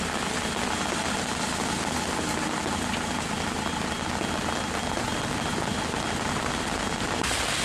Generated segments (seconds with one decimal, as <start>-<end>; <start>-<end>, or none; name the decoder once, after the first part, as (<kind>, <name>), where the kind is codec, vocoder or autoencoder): none